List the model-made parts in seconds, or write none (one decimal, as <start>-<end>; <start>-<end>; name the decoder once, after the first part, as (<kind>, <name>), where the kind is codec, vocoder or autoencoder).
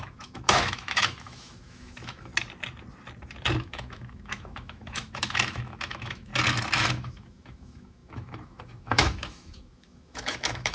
0.0-2.3 (autoencoder, DAC-VAE); 3.6-6.3; 6.9-10.7